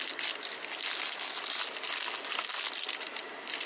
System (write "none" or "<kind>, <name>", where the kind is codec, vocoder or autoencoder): none